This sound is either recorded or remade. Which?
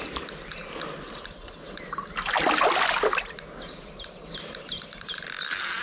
remade